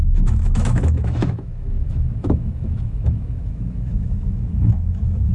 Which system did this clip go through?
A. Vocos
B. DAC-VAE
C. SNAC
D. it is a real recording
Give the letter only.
B